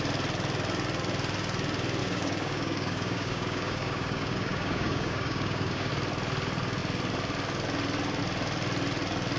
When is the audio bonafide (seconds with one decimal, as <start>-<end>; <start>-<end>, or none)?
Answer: 0.0-2.0; 5.9-9.4